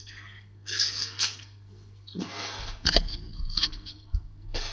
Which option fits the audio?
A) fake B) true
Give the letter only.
A